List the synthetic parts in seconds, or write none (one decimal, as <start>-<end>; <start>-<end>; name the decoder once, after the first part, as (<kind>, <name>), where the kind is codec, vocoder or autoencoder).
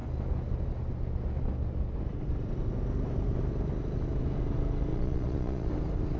4.9-5.7 (vocoder, Vocos)